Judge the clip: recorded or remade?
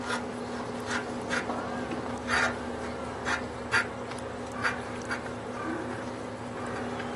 recorded